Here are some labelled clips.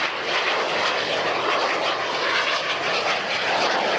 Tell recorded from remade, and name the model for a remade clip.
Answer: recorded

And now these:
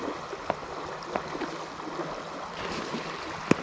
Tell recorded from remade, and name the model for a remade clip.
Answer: recorded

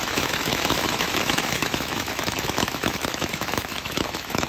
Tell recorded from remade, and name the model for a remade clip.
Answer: remade, autoencoder, DAC-VAE